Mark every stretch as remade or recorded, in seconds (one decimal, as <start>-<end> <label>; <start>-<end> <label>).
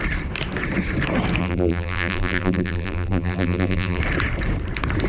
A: 0.0-1.4 recorded; 1.4-4.0 remade; 4.0-5.1 recorded